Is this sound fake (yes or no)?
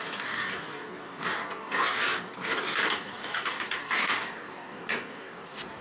yes